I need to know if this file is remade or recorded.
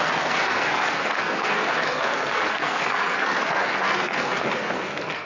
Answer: remade